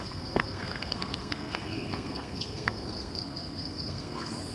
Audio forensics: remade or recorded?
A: remade